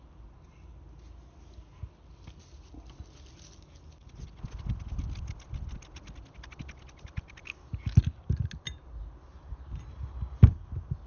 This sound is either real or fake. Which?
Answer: real